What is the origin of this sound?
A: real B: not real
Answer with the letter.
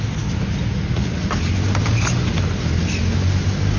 A